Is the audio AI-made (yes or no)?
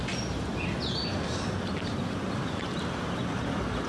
no